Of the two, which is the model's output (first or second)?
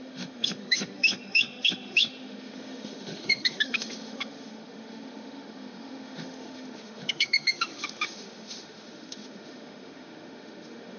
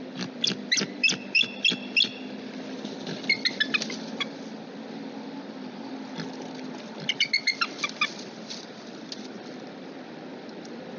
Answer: first